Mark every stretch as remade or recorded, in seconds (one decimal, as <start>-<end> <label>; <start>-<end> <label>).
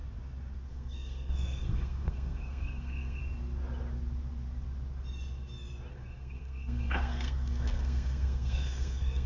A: 0.0-0.7 recorded; 0.7-3.2 remade; 3.2-5.9 recorded; 5.9-9.3 remade